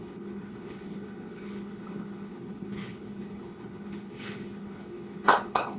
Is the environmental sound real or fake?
fake